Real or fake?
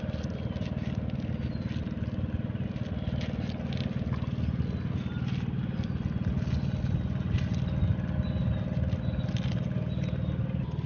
real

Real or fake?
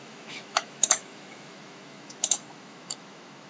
fake